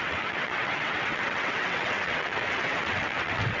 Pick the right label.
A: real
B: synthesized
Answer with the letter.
B